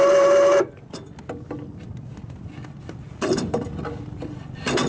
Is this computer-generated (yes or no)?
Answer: no